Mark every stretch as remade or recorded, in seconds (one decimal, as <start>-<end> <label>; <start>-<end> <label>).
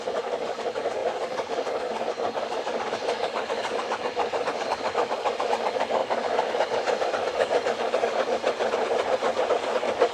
0.0-8.4 remade; 8.4-9.5 recorded; 9.5-10.1 remade